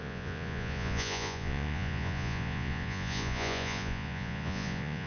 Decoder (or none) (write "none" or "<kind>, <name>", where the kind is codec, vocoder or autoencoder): vocoder, Vocos